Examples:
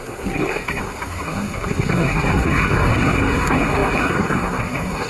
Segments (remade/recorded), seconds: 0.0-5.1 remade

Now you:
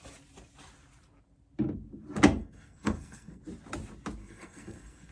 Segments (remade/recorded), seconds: 0.0-2.4 recorded; 2.4-3.4 remade; 3.4-4.2 recorded; 4.2-5.1 remade

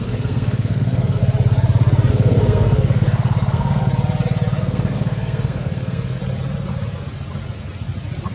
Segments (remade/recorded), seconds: 0.0-1.2 remade; 1.2-2.1 recorded; 2.1-3.9 remade; 3.9-4.6 recorded; 4.6-6.2 remade; 6.2-8.3 recorded